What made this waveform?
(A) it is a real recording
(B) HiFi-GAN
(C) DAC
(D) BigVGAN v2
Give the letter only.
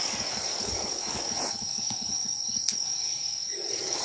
C